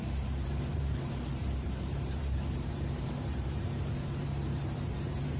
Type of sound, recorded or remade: remade